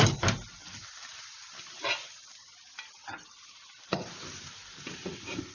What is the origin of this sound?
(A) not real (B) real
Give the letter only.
B